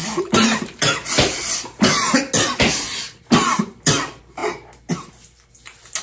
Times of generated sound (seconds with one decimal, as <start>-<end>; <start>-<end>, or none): none